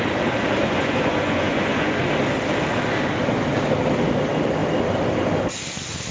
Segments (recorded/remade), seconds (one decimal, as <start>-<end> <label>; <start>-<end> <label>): 0.0-0.6 recorded; 0.6-2.0 remade; 2.0-6.1 recorded